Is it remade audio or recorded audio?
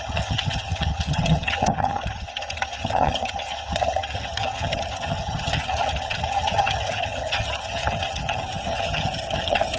remade